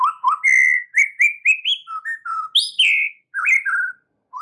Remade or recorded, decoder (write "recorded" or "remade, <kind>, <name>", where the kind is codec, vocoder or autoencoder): recorded